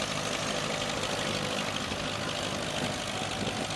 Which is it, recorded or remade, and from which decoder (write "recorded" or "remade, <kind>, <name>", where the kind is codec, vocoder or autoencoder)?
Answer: recorded